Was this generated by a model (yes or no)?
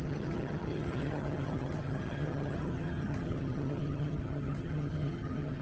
yes